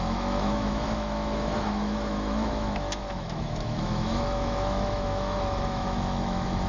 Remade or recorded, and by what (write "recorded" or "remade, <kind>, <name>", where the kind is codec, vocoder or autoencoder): remade, autoencoder, DAC-VAE